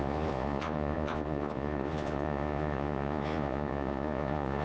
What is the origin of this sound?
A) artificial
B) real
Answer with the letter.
A